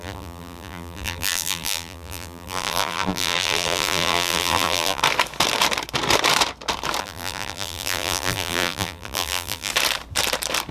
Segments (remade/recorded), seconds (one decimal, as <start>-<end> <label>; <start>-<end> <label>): 0.0-5.0 remade; 5.0-7.0 recorded; 7.0-9.7 remade; 9.7-10.7 recorded